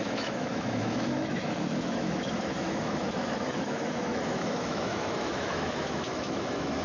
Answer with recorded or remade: remade